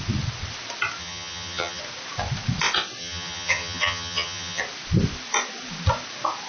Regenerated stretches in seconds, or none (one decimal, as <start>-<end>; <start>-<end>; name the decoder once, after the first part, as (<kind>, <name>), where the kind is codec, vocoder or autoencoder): 1.0-1.8 (vocoder, HiFi-GAN); 3.0-4.6